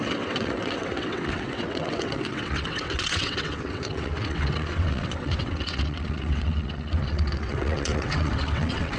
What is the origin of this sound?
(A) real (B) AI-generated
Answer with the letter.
B